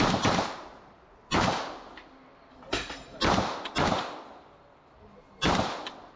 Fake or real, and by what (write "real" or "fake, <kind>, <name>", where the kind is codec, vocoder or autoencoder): real